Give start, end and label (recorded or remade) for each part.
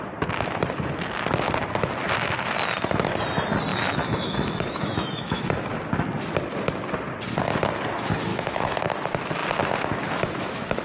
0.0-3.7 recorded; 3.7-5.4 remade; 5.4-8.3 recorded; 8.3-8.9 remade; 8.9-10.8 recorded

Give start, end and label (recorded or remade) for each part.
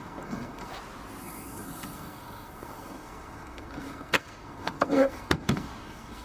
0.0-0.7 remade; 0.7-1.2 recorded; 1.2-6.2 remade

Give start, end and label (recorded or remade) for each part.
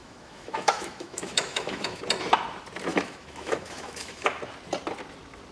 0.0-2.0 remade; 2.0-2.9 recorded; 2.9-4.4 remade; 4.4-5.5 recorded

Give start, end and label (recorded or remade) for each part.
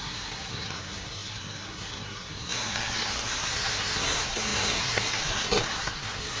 0.0-6.4 remade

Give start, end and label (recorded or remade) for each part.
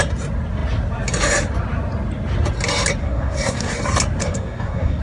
0.0-3.0 recorded; 3.0-3.7 remade; 3.7-4.2 recorded; 4.2-5.0 remade